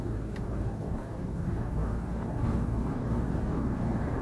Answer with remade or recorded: remade